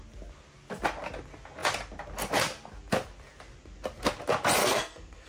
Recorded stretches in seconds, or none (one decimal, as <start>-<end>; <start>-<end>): 0.0-4.6